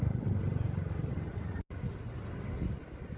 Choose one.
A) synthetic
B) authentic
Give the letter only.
B